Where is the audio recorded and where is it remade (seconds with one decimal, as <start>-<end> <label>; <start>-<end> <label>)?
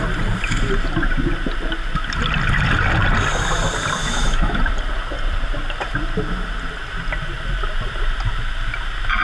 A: 0.0-4.0 recorded; 4.0-4.6 remade; 4.6-9.2 recorded